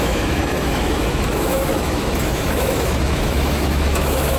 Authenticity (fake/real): fake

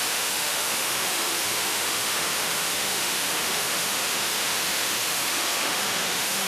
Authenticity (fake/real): fake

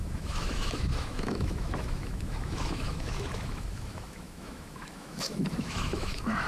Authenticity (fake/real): fake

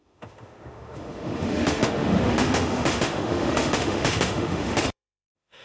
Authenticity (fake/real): fake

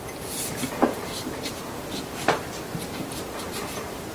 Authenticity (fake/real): real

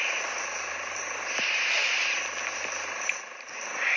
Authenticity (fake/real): real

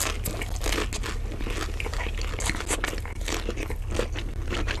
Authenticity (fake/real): real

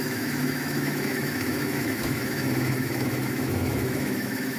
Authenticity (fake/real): fake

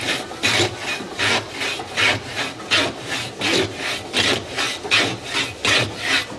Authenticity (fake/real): real